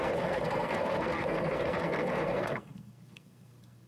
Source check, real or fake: fake